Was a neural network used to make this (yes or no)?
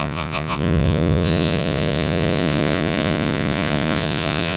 yes